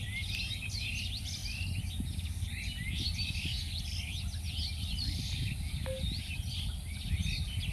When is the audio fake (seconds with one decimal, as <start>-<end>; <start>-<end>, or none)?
none